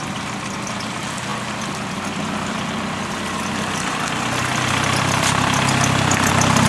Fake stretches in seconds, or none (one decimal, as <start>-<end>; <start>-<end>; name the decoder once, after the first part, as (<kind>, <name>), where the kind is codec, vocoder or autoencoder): none